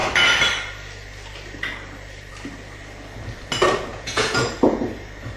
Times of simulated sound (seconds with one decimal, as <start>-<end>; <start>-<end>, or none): 3.9-4.8